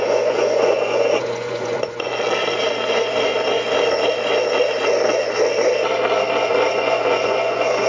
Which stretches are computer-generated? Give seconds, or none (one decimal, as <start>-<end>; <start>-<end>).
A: 0.0-2.1; 6.7-7.9